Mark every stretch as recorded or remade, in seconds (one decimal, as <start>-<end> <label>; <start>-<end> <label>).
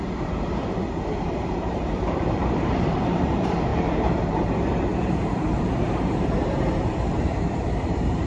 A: 0.0-8.3 remade